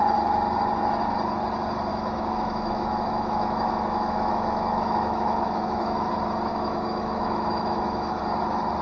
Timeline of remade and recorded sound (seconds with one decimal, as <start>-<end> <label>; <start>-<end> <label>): 0.0-1.9 recorded; 1.9-6.1 remade; 6.1-6.5 recorded; 6.5-8.2 remade; 8.2-8.8 recorded